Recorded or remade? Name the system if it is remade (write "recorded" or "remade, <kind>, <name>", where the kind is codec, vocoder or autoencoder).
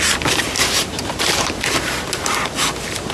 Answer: remade, vocoder, BigVGAN v2